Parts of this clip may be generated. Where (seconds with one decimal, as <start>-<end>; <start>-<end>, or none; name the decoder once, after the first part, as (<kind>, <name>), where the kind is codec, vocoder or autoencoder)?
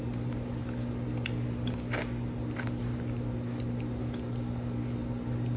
none